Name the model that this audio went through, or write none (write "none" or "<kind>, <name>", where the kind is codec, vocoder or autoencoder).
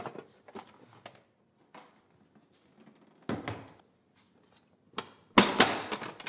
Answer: none